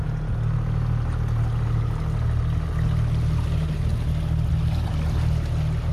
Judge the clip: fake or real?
real